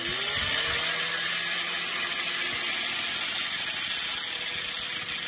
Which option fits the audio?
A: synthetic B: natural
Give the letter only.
B